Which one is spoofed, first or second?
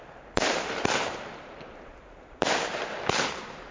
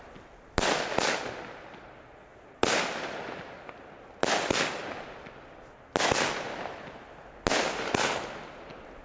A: first